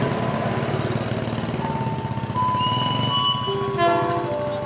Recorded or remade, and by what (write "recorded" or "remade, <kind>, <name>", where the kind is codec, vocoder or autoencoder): recorded